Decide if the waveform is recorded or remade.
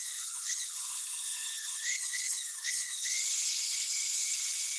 remade